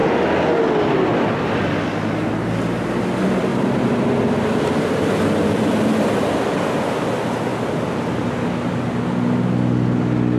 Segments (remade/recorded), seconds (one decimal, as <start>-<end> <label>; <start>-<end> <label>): 0.0-3.5 recorded; 3.5-5.7 remade; 5.7-10.4 recorded